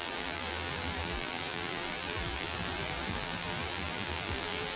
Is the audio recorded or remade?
remade